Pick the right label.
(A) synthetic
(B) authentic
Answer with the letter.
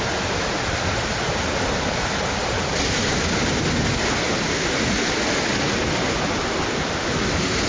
B